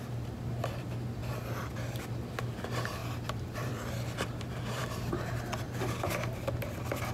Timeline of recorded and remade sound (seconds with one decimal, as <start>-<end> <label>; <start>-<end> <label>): 0.0-3.0 recorded; 3.0-4.3 remade; 4.3-7.1 recorded

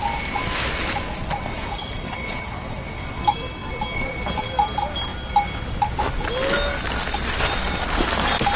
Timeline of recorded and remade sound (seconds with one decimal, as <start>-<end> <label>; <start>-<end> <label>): 0.0-1.5 recorded; 1.5-3.2 remade; 3.2-8.6 recorded

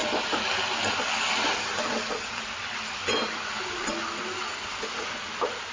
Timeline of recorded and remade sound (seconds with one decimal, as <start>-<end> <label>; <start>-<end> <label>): 0.0-5.7 recorded

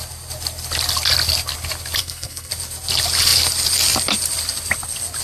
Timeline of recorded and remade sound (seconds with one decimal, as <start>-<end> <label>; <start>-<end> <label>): 0.0-2.0 recorded; 2.0-2.5 remade; 2.5-5.2 recorded